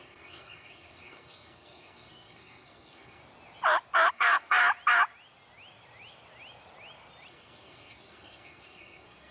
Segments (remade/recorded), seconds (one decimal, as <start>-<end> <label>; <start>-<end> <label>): 0.0-3.2 remade; 3.2-4.1 recorded; 4.1-4.6 remade; 4.6-7.3 recorded; 7.3-9.3 remade